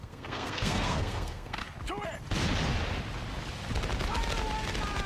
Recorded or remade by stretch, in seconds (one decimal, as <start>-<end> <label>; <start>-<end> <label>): 0.0-1.6 remade; 1.6-5.1 recorded